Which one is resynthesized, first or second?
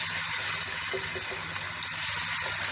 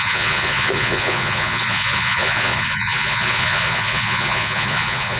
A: second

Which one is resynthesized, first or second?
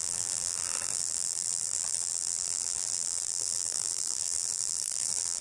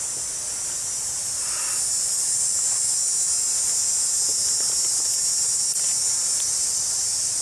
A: first